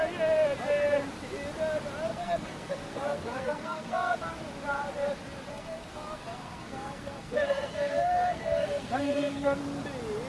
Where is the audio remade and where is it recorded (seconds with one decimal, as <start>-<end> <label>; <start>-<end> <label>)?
0.0-2.1 recorded; 2.1-4.2 remade; 4.2-5.5 recorded; 5.5-9.6 remade; 9.6-10.3 recorded